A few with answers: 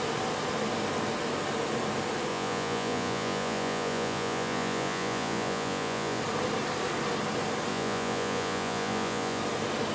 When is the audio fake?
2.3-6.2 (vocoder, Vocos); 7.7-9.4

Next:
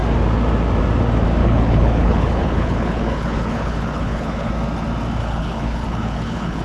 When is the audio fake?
1.4-4.5 (codec, HILCodec); 5.2-6.6

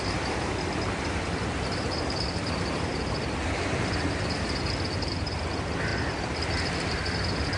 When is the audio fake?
5.9-6.4 (vocoder, BigVGAN v2)

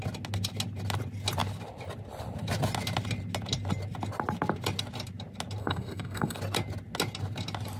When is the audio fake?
5.6-6.4 (codec, SNAC)

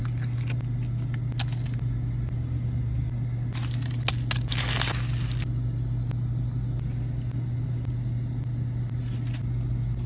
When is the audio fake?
none

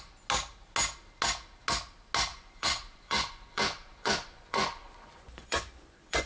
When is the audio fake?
2.3-6.3 (vocoder, Vocos)

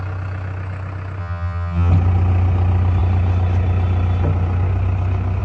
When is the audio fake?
1.2-1.9 (vocoder, HiFi-GAN)